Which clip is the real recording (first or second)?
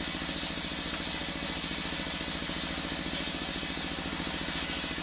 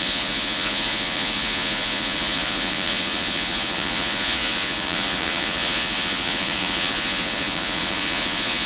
first